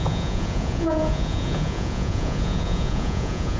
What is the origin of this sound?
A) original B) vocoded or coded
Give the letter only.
B